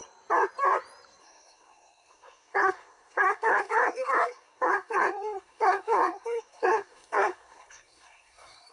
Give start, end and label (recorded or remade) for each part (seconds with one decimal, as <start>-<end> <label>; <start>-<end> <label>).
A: 0.0-1.2 recorded; 1.2-8.7 remade